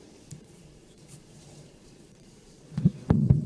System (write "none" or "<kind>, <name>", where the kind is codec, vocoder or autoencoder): vocoder, Vocos